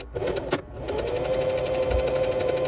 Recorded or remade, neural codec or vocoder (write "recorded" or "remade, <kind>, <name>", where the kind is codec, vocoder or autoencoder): recorded